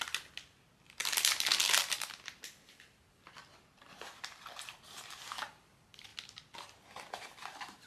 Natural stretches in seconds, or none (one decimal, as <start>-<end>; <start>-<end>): 0.0-7.9